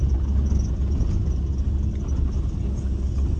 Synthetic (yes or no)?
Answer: no